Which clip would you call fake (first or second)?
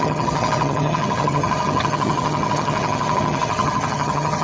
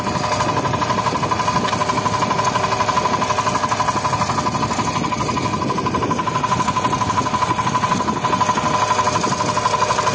first